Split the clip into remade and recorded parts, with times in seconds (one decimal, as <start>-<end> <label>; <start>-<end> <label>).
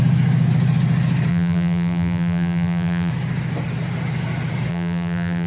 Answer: 0.0-1.3 recorded; 1.3-3.1 remade; 3.1-4.7 recorded; 4.7-5.5 remade